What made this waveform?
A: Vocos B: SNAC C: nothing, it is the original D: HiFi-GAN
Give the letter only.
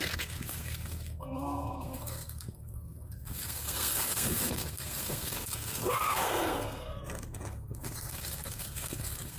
B